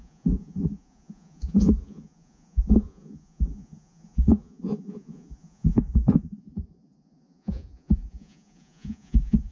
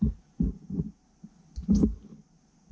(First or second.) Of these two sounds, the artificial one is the first